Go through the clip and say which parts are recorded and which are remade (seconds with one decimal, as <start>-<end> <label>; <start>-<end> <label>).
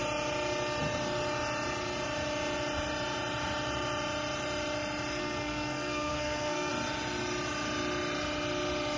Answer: 0.0-5.2 recorded; 5.2-6.7 remade; 6.7-9.0 recorded